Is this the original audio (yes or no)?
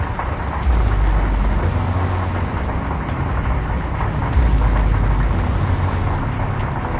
yes